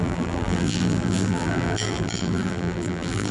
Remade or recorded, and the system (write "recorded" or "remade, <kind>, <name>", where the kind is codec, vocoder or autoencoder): remade, vocoder, BigVGAN v2